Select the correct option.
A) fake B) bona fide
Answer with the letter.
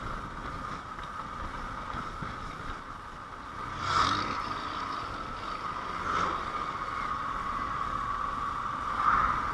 B